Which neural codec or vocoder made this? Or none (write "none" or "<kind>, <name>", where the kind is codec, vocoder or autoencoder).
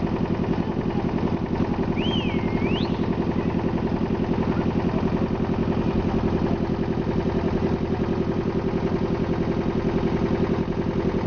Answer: none